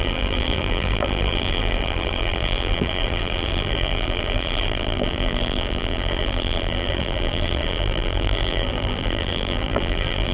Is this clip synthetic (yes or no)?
yes